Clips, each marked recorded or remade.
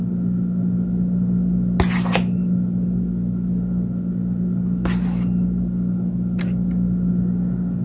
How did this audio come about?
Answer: recorded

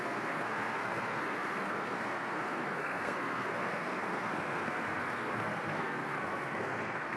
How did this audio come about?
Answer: remade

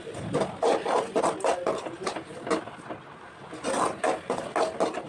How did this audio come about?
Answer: recorded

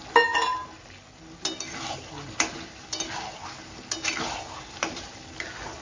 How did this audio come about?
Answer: recorded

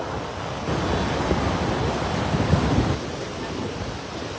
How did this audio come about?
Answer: recorded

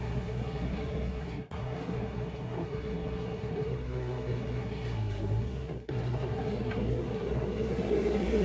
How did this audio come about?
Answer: remade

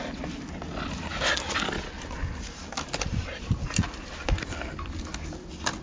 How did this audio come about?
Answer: recorded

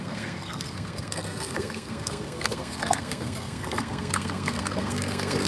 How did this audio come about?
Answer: remade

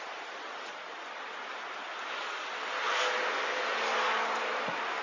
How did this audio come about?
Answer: recorded